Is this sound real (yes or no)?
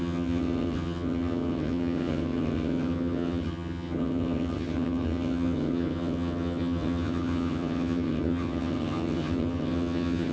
no